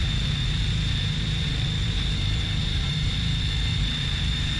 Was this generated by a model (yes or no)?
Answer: yes